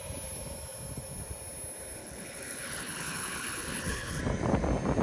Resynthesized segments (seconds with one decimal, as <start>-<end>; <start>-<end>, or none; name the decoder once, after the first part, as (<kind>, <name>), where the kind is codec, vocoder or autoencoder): 2.0-4.2 (codec, HILCodec)